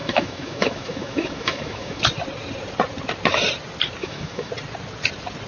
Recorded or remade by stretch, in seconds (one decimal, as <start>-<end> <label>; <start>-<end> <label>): 0.0-2.0 remade; 2.0-4.0 recorded; 4.0-4.5 remade; 4.5-5.5 recorded